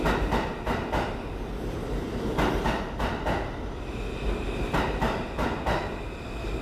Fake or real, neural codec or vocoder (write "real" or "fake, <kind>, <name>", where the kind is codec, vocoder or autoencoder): real